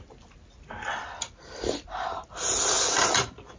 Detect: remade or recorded recorded